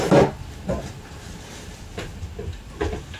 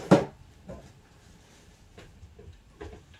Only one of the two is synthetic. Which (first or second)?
second